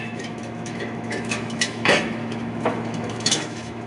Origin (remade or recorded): remade